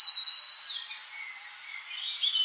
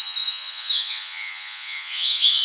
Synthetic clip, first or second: second